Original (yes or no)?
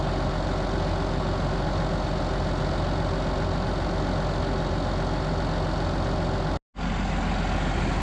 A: yes